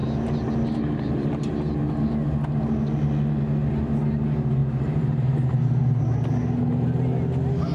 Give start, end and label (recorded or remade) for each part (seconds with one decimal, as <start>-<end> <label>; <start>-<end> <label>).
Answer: 0.0-4.6 recorded; 4.6-6.0 remade; 6.0-7.7 recorded